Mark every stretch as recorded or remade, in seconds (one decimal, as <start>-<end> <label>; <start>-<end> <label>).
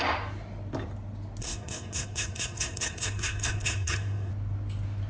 0.0-1.4 recorded; 1.4-4.3 remade; 4.3-5.1 recorded